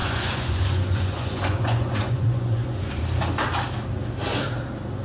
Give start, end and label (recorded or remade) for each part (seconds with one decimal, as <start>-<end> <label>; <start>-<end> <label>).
0.0-3.0 remade; 3.0-5.0 recorded